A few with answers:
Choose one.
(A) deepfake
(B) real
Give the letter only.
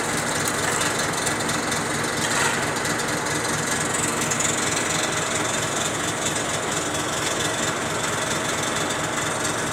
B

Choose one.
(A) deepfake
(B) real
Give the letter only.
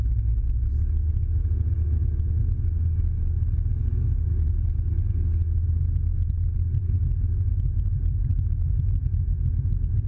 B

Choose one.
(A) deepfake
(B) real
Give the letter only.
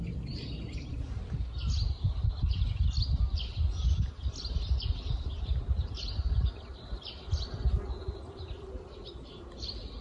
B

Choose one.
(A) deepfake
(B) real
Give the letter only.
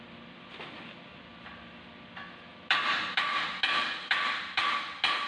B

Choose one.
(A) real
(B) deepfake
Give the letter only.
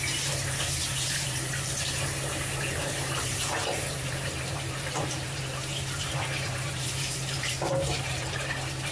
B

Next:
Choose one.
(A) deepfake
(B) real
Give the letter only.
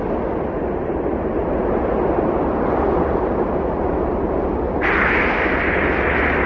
B